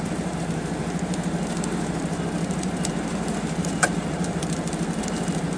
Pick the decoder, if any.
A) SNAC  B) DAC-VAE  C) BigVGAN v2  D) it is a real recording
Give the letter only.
C